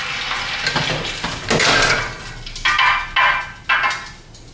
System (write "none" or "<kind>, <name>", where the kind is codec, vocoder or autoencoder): none